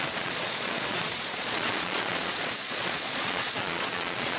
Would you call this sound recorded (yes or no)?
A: no